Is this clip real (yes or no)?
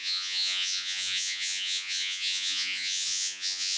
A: no